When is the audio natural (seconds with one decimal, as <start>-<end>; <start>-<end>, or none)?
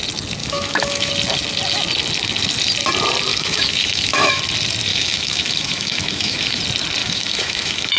0.0-0.4; 1.1-3.3; 4.4-4.9; 6.6-7.0